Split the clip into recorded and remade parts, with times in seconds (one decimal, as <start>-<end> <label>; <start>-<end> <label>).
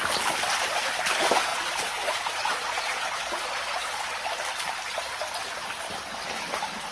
0.0-1.5 recorded; 1.5-4.3 remade; 4.3-6.9 recorded